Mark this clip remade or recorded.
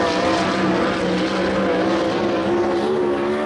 recorded